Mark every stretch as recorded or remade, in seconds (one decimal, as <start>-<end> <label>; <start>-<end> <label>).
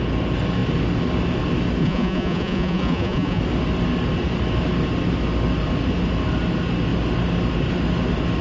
0.0-1.8 recorded; 1.8-3.4 remade; 3.4-8.4 recorded